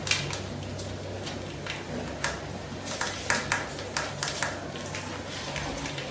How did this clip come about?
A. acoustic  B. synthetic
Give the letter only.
A